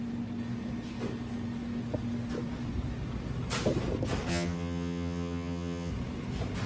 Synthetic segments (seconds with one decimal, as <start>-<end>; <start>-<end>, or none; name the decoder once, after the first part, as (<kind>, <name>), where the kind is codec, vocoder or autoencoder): 4.3-5.9 (vocoder, HiFi-GAN)